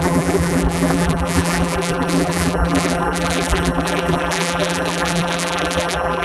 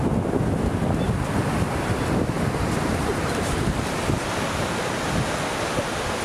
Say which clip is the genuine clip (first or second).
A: second